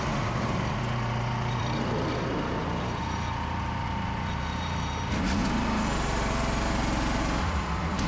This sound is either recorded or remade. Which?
recorded